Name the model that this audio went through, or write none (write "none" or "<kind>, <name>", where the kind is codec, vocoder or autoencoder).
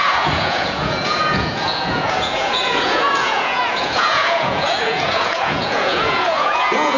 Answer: vocoder, Vocos